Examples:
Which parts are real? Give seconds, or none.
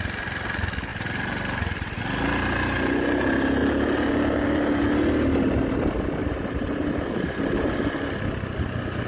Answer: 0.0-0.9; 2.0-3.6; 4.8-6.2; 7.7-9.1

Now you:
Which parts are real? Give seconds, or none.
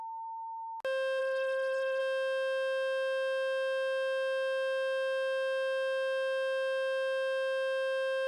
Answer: 0.0-1.2; 2.0-8.3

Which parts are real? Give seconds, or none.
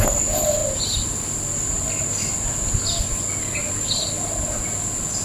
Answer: 0.0-5.2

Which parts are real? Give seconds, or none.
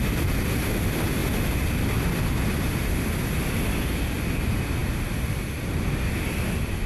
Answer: 0.0-6.9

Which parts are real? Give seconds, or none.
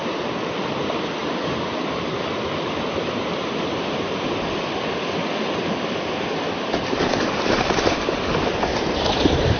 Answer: 0.0-1.2; 4.1-8.7